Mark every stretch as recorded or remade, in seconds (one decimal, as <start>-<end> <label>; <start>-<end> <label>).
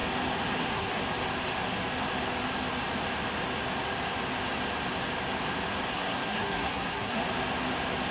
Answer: 0.0-0.6 recorded; 0.6-1.0 remade; 1.0-5.9 recorded; 5.9-7.2 remade; 7.2-8.1 recorded